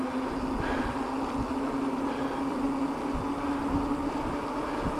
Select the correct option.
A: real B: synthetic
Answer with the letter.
A